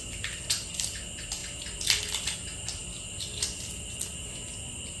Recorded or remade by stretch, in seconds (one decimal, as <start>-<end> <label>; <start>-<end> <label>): 0.0-5.0 recorded